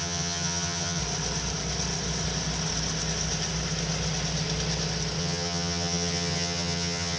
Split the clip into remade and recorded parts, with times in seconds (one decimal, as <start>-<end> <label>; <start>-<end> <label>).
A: 0.0-1.0 remade; 1.0-5.2 recorded; 5.2-7.2 remade